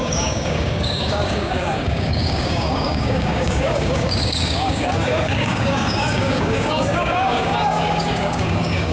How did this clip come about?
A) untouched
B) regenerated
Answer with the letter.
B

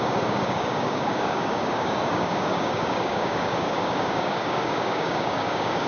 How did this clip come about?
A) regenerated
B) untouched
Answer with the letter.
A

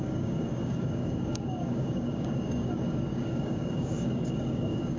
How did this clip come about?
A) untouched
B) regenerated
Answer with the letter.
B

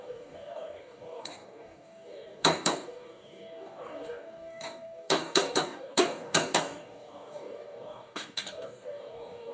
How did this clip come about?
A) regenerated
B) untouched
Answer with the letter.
A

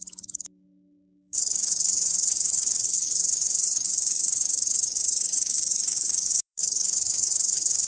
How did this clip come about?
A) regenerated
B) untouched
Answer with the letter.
A